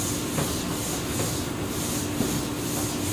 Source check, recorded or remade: recorded